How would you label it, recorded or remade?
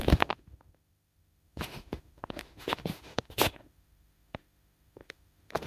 remade